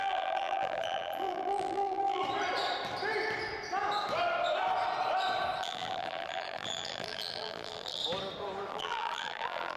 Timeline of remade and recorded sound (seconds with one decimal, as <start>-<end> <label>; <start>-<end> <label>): 0.0-2.2 remade; 2.2-5.6 recorded; 5.6-8.0 remade; 8.0-8.7 recorded; 8.7-9.8 remade